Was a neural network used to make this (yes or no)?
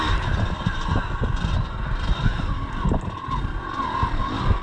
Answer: no